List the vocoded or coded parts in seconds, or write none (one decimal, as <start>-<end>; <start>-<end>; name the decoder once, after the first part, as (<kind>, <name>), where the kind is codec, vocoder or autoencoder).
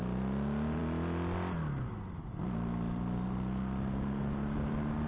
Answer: none